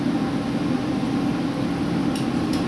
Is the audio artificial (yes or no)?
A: no